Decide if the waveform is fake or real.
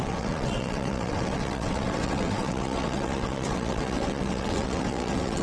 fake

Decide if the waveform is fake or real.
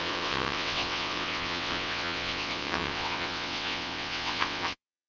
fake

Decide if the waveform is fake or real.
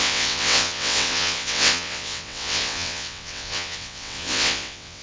fake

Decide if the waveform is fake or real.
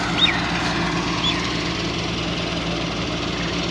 real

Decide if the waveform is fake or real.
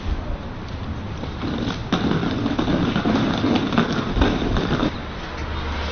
real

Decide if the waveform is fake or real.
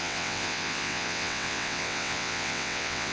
fake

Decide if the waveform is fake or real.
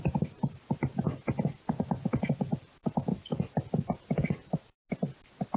real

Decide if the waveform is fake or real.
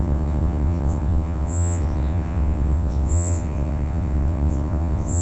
fake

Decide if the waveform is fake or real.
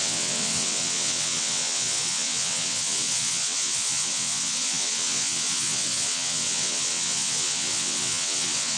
fake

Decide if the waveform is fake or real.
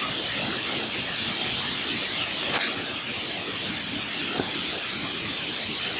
real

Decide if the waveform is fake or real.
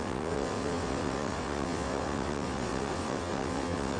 fake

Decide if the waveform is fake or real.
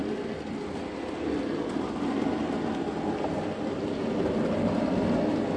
real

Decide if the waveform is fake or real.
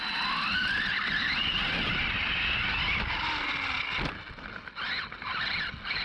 real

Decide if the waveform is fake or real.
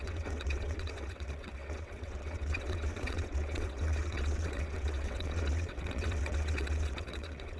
fake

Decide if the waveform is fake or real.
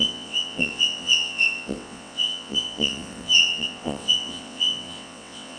fake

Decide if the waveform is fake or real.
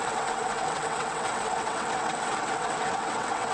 fake